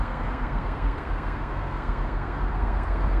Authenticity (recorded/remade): remade